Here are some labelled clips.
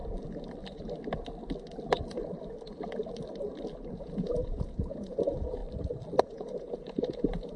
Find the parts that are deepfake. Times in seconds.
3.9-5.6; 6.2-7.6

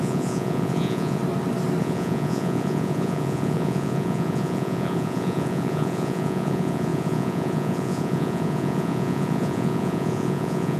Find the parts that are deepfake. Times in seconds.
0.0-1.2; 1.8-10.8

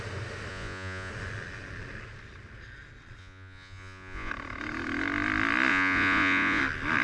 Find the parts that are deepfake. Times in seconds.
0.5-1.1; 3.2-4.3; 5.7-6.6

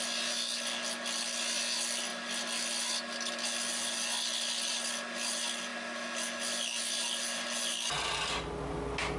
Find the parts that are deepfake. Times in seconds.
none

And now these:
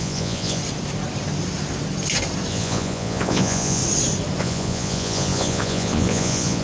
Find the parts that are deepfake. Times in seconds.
0.0-0.6; 2.5-3.8; 4.4-6.6

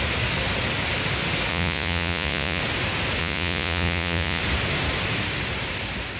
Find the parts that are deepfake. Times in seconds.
1.5-2.6; 3.2-4.4

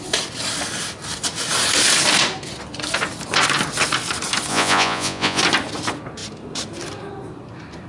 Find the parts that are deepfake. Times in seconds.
4.5-5.4

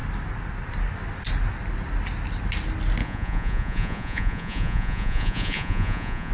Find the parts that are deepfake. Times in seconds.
3.0-6.3